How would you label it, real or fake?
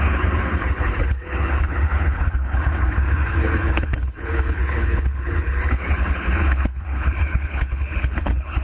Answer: fake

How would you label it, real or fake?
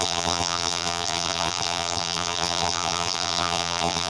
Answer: fake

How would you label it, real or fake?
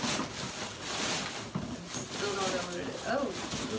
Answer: real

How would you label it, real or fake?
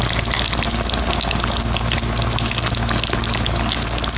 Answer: real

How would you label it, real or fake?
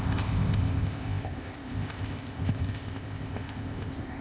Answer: fake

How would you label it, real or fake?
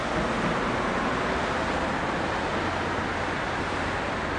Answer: real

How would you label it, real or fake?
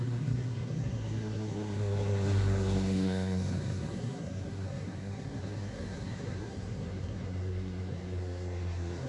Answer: fake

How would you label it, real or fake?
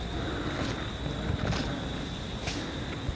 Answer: real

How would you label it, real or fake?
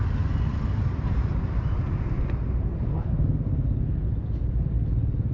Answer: real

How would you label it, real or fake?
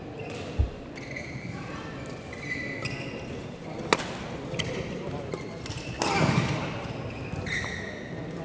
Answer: real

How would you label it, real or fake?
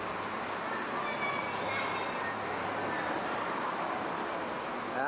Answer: real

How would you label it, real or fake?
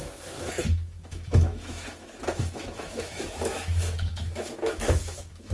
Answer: fake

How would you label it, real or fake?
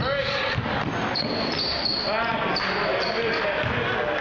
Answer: real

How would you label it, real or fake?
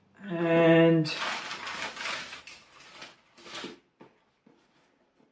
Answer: real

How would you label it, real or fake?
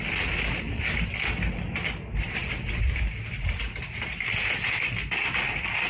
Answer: real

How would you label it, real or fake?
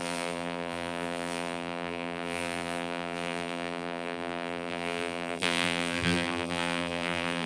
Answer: fake